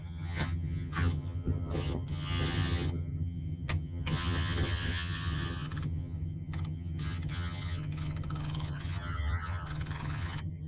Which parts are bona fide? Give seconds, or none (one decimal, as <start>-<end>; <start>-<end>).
none